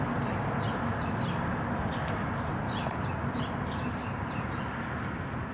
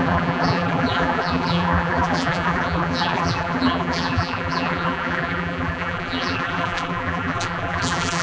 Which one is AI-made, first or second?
second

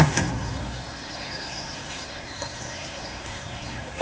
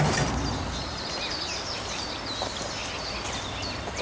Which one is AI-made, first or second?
first